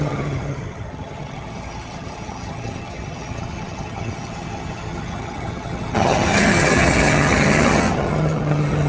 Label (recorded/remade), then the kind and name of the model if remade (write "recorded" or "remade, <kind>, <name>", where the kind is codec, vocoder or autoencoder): remade, vocoder, HiFi-GAN